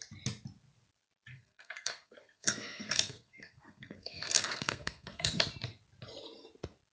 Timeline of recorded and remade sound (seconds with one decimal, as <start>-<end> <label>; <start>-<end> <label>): 0.0-1.3 recorded; 1.3-5.4 remade; 5.4-6.9 recorded